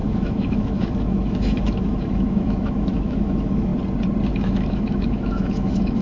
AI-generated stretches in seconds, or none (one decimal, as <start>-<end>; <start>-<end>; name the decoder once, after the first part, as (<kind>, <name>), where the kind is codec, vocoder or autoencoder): 0.0-3.7 (autoencoder, DAC-VAE); 4.3-6.0